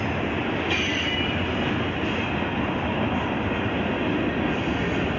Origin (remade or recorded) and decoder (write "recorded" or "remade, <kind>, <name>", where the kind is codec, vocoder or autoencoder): recorded